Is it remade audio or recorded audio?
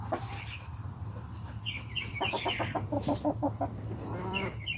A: remade